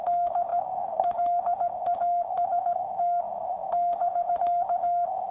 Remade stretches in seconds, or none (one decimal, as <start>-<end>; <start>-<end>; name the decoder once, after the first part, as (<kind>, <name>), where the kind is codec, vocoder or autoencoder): 0.0-5.3 (autoencoder, DAC-VAE)